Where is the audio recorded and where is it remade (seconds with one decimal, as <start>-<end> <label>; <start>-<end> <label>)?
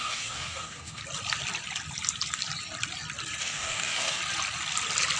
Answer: 0.0-1.0 remade; 1.0-3.4 recorded; 3.4-4.2 remade; 4.2-5.2 recorded